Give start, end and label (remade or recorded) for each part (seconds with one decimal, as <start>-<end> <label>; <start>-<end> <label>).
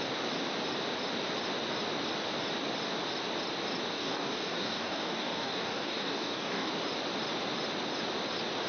0.0-3.9 recorded; 3.9-6.7 remade; 6.7-8.7 recorded